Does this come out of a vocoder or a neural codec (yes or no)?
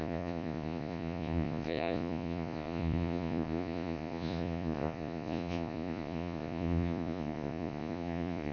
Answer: yes